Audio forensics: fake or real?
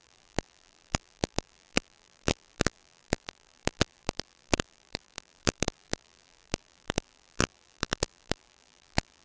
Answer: fake